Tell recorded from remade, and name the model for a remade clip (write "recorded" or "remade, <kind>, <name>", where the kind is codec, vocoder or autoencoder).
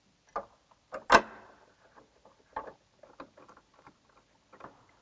recorded